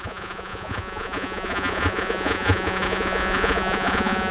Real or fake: fake